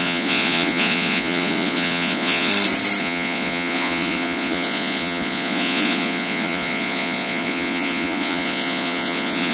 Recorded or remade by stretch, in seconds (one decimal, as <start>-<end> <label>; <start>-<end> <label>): 0.0-2.5 remade; 2.5-3.0 recorded; 3.0-9.5 remade